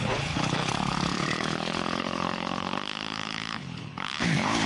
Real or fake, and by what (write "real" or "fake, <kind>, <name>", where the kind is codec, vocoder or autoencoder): fake, codec, HILCodec